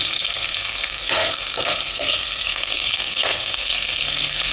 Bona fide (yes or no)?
no